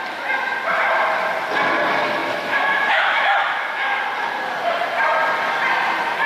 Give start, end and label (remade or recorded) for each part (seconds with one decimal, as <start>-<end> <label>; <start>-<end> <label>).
0.0-2.2 recorded; 2.2-4.0 remade; 4.0-6.3 recorded